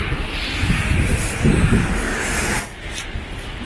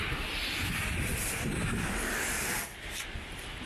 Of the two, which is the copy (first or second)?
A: second